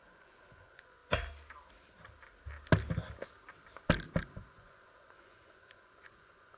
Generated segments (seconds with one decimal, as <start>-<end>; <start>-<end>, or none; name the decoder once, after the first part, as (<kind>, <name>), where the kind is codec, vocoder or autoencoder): 0.0-1.0 (vocoder, Vocos); 4.2-6.6